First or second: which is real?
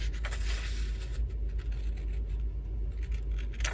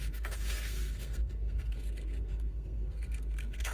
first